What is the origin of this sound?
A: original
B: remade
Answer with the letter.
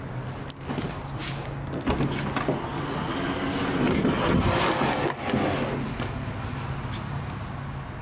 A